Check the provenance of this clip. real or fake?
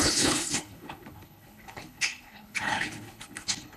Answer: fake